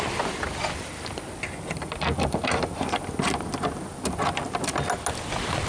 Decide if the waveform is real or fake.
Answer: real